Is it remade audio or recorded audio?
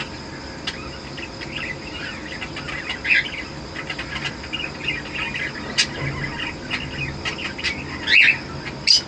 recorded